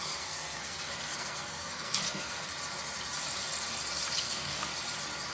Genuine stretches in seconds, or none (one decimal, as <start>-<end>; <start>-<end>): 2.5-4.2; 4.7-5.3